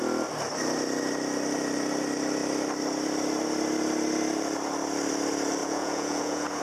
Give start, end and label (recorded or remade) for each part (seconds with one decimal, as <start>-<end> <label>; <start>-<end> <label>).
0.0-5.6 recorded; 5.6-6.6 remade